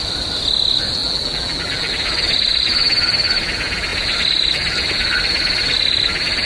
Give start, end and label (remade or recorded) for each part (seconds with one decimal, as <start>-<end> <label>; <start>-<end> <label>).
0.0-1.0 recorded; 1.0-1.9 remade; 1.9-6.5 recorded